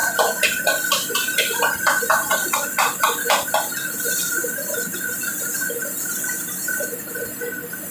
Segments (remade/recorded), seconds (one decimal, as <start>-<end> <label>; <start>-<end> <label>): 0.0-7.9 recorded